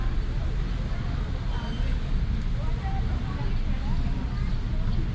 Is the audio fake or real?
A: real